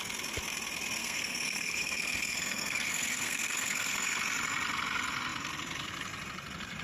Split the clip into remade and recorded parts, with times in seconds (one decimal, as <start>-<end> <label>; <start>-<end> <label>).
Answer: 0.0-1.0 recorded; 1.0-4.2 remade; 4.2-6.8 recorded